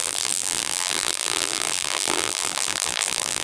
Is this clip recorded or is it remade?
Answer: remade